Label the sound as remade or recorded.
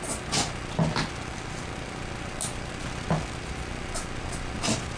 recorded